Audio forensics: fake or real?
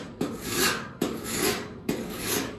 fake